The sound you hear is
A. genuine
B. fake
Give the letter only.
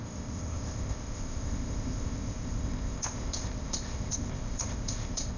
B